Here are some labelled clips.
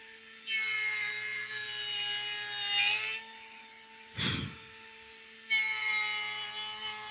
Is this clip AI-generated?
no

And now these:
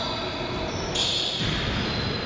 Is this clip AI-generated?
no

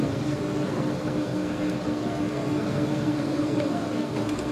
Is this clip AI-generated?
yes